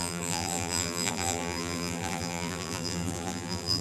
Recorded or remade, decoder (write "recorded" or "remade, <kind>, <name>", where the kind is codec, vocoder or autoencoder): remade, vocoder, BigVGAN v2